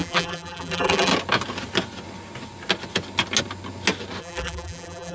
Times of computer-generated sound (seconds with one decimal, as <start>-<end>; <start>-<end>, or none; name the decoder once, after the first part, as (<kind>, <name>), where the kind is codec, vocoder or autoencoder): 0.0-1.1 (vocoder, BigVGAN v2); 4.2-5.1